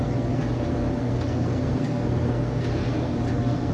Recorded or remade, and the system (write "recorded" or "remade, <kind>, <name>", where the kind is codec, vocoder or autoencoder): remade, codec, SNAC